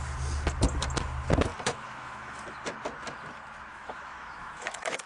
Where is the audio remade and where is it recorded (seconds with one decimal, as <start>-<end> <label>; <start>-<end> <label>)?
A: 0.0-1.5 recorded; 1.5-2.4 remade; 2.4-3.7 recorded; 3.7-5.1 remade